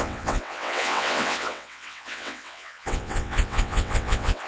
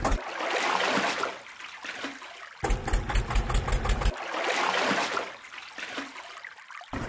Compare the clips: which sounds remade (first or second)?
first